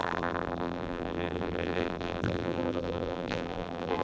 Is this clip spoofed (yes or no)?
yes